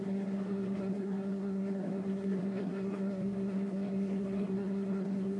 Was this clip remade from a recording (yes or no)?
yes